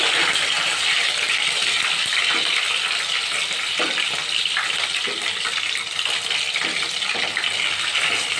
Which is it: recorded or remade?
recorded